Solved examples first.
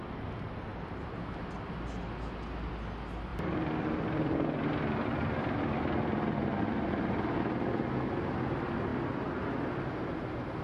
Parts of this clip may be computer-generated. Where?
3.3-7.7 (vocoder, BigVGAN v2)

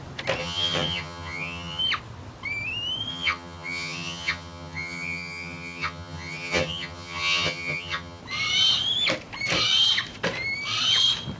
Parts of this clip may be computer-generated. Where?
0.4-1.8 (vocoder, HiFi-GAN); 3.1-8.2

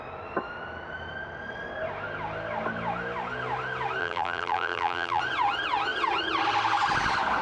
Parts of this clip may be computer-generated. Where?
4.0-5.2 (vocoder, BigVGAN v2)

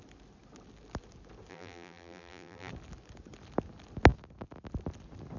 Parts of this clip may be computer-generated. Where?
1.5-2.7 (vocoder, BigVGAN v2)

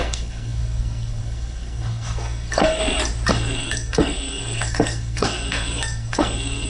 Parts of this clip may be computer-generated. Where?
0.0-2.8 (codec, SNAC); 3.3-6.7

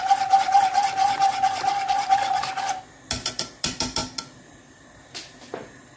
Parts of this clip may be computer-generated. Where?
0.0-1.2 (vocoder, BigVGAN v2); 2.7-4.0

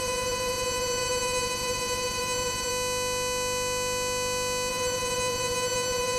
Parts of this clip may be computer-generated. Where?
0.0-2.7 (vocoder, Vocos); 4.7-6.2